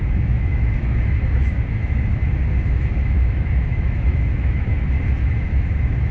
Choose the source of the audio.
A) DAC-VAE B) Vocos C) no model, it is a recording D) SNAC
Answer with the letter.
A